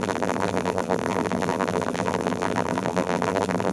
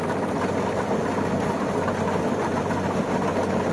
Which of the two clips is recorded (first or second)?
second